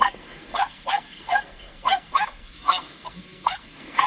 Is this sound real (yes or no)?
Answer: no